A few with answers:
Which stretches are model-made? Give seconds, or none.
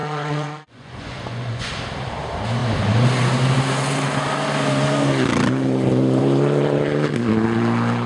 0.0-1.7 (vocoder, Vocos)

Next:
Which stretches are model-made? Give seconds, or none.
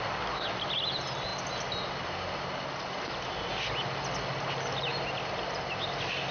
none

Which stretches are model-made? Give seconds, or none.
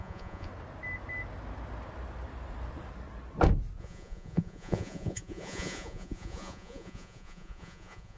0.0-0.5 (vocoder, Vocos); 3.8-8.2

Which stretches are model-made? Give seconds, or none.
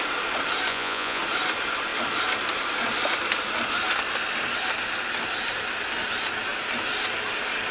0.7-1.2 (vocoder, Vocos)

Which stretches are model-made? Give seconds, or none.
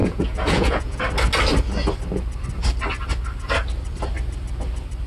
0.0-1.0 (vocoder, Vocos)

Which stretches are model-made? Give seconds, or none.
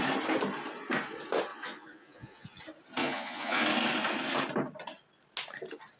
1.5-2.6 (vocoder, Vocos); 3.0-3.6